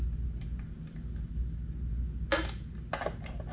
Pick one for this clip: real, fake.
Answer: real